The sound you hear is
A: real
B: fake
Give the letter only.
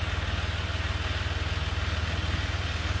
A